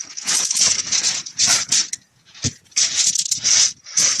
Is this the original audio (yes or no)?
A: no